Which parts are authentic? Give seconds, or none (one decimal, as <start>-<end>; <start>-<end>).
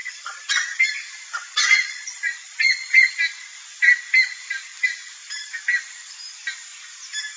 0.9-1.5; 3.2-7.4